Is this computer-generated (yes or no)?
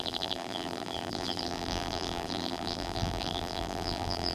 yes